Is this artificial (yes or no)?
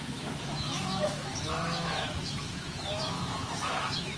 yes